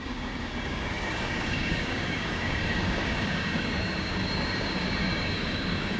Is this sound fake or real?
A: fake